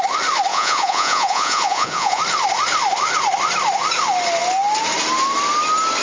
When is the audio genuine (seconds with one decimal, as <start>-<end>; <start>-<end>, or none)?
0.0-0.5; 2.2-6.0